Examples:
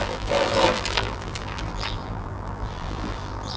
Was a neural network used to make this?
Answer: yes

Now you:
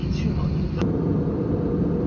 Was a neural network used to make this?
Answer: no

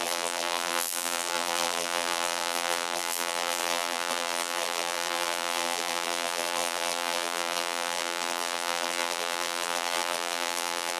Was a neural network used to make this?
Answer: yes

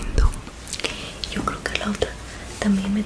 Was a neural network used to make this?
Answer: no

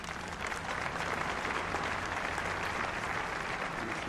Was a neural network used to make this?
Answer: yes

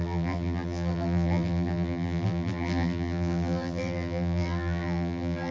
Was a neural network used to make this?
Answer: yes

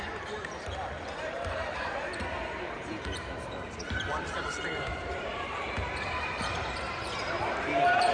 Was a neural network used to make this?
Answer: yes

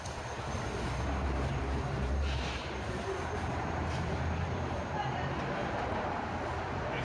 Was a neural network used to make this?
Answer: yes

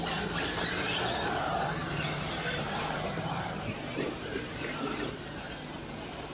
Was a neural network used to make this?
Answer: yes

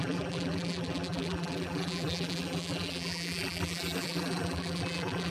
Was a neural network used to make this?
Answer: yes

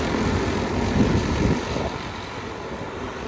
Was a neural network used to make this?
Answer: no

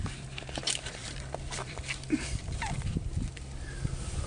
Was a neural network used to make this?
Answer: yes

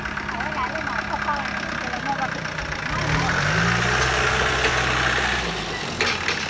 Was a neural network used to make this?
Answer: no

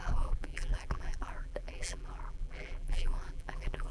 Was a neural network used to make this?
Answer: yes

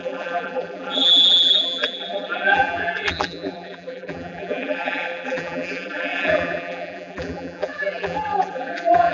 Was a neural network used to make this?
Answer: yes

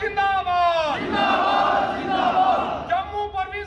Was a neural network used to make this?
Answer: no